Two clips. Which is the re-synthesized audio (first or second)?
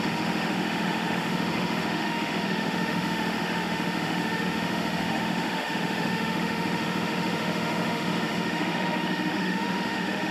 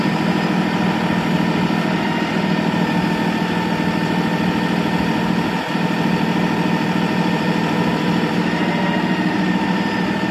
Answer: first